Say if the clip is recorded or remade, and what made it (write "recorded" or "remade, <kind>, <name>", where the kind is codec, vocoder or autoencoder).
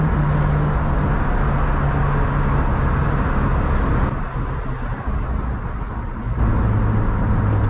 recorded